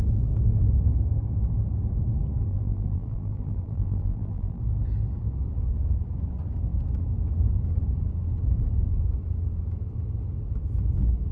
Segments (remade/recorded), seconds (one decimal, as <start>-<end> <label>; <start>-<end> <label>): 0.0-2.5 recorded; 2.5-4.6 remade; 4.6-11.3 recorded